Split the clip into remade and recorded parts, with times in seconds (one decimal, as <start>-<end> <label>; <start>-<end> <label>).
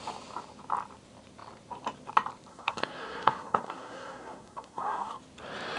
0.0-2.5 recorded; 2.5-5.2 remade; 5.2-5.8 recorded